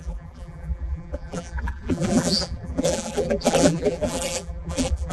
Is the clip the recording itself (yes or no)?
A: no